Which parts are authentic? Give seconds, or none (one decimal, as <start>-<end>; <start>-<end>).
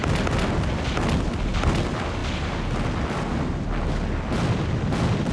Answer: 0.0-5.3